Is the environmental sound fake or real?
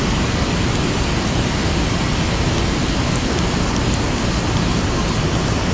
real